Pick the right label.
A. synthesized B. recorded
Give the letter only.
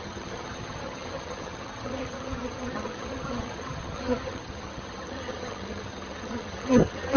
A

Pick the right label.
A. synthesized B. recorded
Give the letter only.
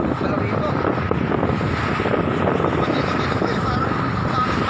B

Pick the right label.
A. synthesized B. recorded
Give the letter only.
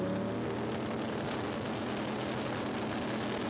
B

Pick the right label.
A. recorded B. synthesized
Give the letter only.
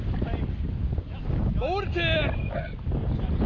A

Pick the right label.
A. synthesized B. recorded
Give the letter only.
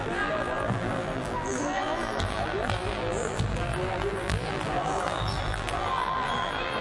A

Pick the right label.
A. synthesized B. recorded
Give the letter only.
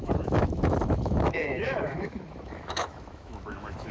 A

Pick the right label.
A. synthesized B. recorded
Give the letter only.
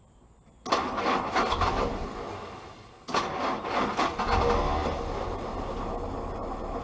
B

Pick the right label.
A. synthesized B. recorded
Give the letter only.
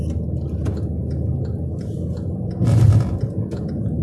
B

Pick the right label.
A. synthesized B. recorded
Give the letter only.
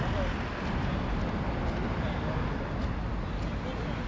B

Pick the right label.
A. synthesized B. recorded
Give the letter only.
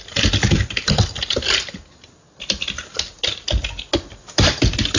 B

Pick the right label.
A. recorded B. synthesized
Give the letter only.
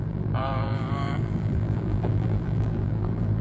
B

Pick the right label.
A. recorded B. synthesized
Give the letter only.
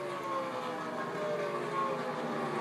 A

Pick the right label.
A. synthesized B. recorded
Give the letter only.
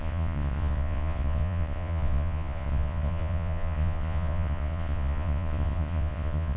A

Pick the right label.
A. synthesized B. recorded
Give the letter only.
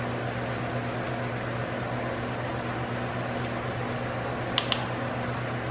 B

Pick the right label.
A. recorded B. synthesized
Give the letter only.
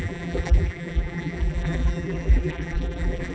B